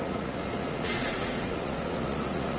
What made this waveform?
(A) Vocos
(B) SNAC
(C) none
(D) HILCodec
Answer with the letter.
A